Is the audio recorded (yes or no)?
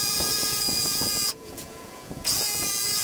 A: no